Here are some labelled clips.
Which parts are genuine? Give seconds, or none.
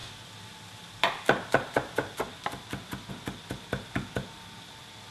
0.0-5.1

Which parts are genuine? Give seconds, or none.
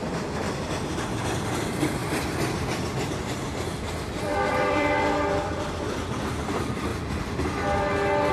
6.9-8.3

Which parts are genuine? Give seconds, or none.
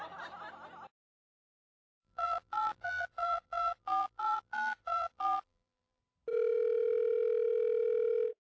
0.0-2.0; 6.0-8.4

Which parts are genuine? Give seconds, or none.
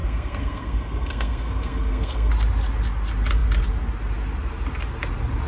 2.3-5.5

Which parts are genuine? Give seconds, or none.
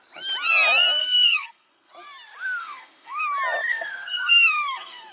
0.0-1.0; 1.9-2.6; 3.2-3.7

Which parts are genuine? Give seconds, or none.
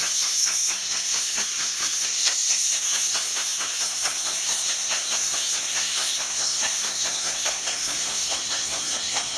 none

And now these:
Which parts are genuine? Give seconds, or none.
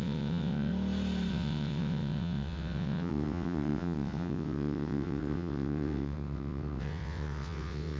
0.7-1.3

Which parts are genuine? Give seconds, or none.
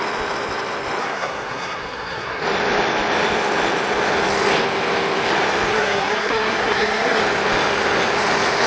0.0-1.0; 2.4-5.7; 7.2-8.7